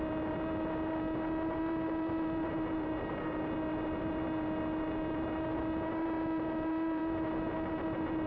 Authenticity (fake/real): fake